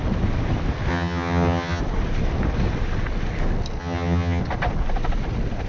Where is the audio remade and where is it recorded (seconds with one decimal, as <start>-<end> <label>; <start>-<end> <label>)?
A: 0.0-0.9 recorded; 0.9-1.8 remade; 1.8-3.8 recorded; 3.8-4.4 remade; 4.4-5.7 recorded